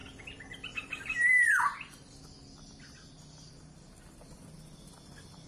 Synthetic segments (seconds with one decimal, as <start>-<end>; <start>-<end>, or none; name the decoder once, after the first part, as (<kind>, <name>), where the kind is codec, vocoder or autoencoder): 0.0-2.2 (vocoder, BigVGAN v2)